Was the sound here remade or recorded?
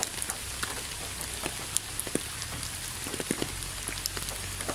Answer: recorded